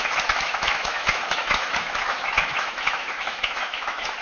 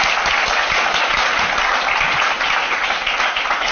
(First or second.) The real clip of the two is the second